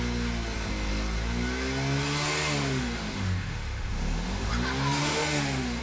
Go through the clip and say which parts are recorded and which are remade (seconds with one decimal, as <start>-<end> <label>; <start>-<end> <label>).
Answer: 0.0-2.6 recorded; 2.6-4.5 remade; 4.5-5.0 recorded; 5.0-5.8 remade